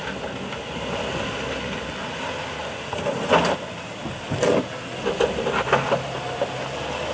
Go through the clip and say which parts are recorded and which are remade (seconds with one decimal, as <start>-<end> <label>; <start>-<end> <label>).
0.0-7.1 recorded